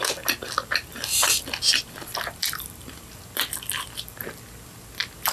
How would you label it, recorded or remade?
recorded